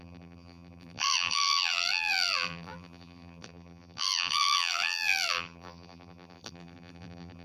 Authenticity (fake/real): fake